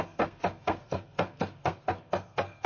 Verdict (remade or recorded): remade